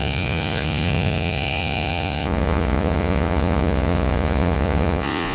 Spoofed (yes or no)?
yes